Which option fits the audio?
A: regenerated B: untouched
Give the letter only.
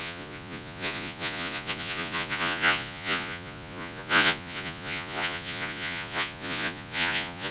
A